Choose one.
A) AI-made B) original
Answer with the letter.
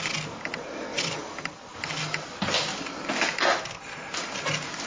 B